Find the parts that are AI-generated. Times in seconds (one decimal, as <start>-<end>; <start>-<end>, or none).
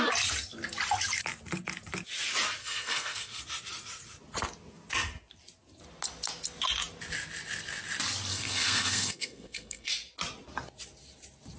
2.6-3.4; 8.3-9.9